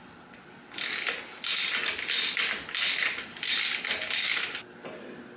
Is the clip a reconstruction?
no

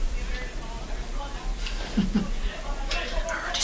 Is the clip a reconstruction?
no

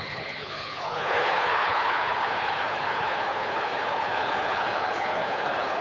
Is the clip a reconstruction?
yes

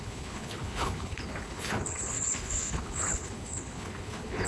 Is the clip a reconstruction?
yes